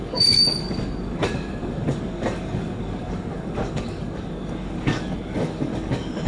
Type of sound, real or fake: fake